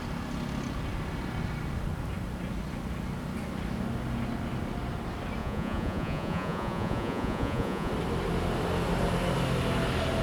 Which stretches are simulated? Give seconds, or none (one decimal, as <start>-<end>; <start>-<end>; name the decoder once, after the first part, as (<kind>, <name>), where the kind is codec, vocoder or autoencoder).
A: 5.4-7.9 (vocoder, Vocos)